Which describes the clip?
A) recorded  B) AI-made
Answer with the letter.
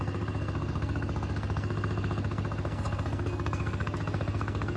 B